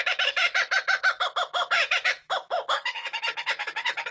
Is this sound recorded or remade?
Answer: remade